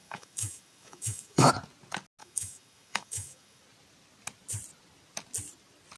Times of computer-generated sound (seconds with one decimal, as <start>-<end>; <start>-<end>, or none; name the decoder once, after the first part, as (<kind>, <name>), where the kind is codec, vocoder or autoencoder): 0.0-1.5 (autoencoder, DAC-VAE); 2.2-3.6